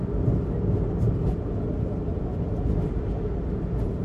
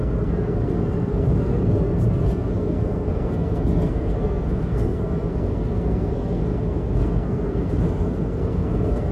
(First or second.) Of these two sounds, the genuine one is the first